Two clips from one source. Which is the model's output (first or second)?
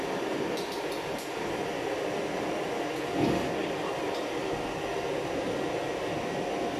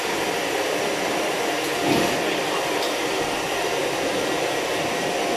second